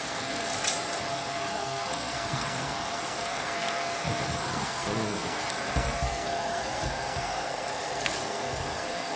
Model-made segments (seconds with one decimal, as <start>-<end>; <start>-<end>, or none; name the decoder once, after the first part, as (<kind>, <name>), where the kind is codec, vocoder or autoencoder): 0.0-0.5 (codec, SNAC); 1.0-9.2